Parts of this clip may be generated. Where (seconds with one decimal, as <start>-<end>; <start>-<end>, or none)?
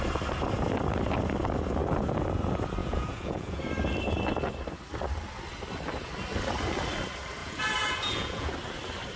2.8-3.6; 7.4-8.5